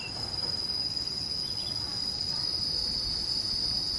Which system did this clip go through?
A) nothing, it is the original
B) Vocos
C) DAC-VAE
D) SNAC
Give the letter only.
A